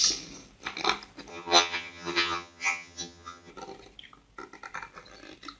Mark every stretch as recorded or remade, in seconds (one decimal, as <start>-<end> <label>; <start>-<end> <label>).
0.0-1.3 recorded; 1.3-3.5 remade; 3.5-5.6 recorded